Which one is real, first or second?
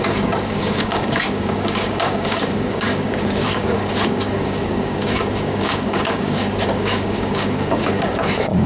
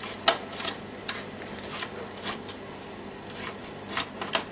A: second